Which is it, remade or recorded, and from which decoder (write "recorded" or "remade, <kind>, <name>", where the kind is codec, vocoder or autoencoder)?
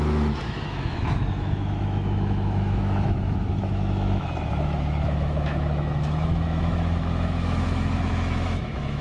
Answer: remade, autoencoder, DAC-VAE